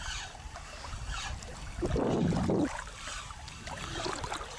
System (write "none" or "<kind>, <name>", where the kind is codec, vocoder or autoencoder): none